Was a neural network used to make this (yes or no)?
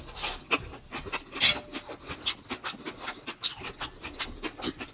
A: no